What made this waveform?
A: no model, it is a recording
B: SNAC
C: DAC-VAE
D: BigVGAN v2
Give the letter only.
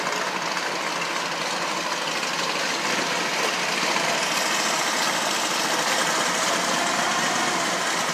A